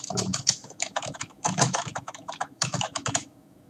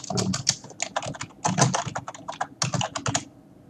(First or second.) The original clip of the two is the second